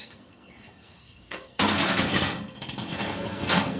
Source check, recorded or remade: remade